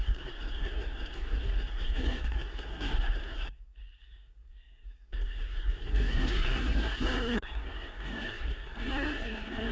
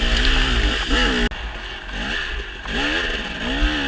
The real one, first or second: second